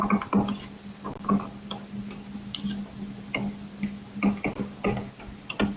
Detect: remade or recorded recorded